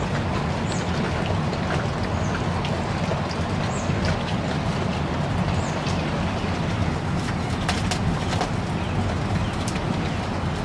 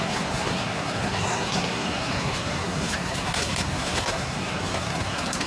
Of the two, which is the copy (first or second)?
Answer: second